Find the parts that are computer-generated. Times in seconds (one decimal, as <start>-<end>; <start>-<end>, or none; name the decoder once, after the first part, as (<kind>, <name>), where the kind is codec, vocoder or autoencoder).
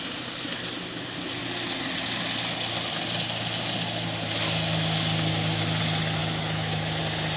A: 6.2-7.0 (autoencoder, DAC-VAE)